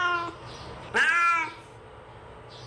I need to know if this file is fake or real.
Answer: real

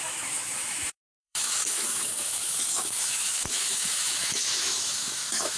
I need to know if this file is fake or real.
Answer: fake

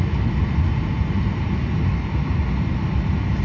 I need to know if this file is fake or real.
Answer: real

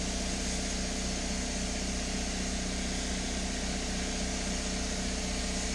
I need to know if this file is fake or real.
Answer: real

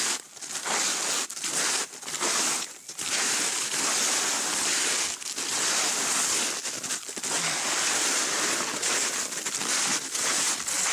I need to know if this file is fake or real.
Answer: real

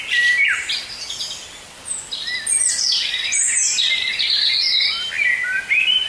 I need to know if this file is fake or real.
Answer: real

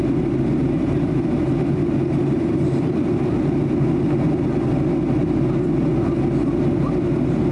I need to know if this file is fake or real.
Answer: real